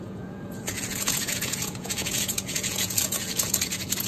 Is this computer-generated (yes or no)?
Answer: yes